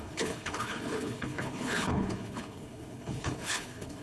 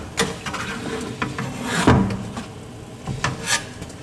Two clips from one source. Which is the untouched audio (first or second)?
second